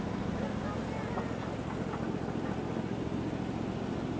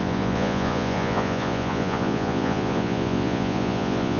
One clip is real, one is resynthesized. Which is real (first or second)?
first